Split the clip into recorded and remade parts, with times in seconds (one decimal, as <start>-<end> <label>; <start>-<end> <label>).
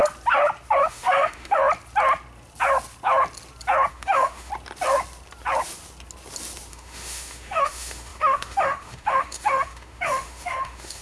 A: 0.0-0.8 recorded; 0.8-1.6 remade; 1.6-3.9 recorded; 3.9-4.5 remade; 4.5-6.7 recorded; 6.7-11.0 remade